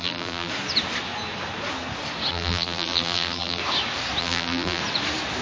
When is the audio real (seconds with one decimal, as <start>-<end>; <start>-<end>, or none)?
0.5-2.3; 3.6-4.2; 4.8-5.4